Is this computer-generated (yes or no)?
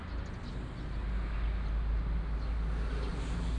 no